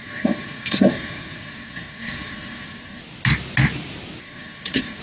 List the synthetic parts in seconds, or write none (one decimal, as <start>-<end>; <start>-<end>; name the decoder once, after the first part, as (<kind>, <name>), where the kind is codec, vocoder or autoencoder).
0.0-3.0 (codec, SNAC); 4.2-5.0